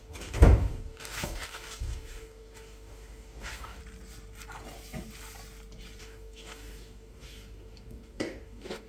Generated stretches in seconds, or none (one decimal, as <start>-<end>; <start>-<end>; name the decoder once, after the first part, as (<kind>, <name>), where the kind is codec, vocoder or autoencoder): 0.0-3.8 (codec, DAC); 6.0-8.9